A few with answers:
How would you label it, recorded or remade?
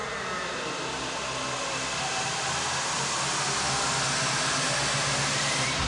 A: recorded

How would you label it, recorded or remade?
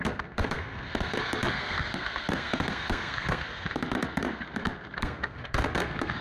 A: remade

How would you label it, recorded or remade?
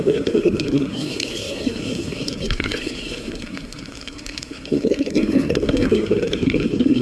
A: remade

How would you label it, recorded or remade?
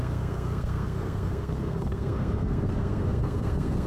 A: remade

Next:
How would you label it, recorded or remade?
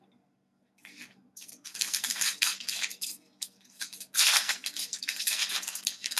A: remade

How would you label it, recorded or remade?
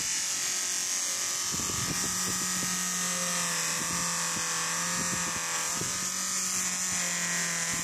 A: recorded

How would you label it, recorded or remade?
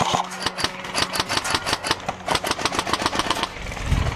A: recorded